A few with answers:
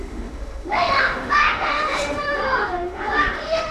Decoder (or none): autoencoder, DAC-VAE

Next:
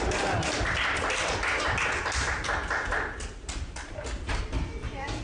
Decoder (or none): none